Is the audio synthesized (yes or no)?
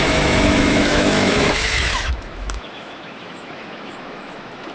yes